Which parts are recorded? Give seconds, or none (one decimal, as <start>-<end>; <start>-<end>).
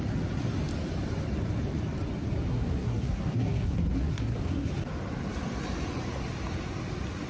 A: 0.0-2.5; 4.7-7.3